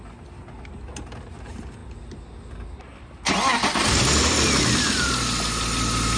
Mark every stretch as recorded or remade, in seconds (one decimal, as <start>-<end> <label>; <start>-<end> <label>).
0.0-6.2 recorded